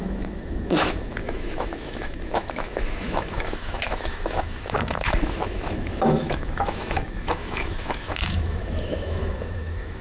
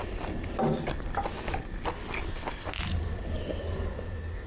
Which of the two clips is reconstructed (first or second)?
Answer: first